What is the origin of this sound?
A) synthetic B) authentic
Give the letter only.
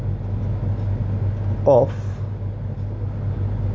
B